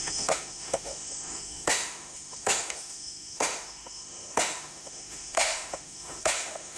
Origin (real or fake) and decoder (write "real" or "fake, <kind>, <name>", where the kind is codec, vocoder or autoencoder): fake, autoencoder, DAC-VAE